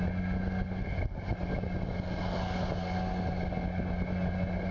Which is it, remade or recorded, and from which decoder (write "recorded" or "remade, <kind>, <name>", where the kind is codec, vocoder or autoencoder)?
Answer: recorded